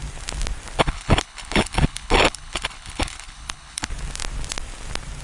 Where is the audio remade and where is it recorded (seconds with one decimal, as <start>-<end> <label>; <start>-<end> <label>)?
0.0-0.8 recorded; 0.8-3.9 remade; 3.9-5.2 recorded